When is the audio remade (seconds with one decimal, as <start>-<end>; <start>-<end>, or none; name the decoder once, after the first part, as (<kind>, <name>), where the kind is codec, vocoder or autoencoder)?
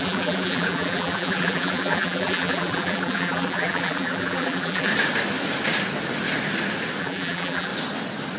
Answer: 0.0-4.9 (vocoder, BigVGAN v2); 7.0-7.7